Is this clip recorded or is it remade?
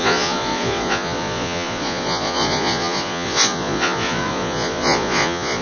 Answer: remade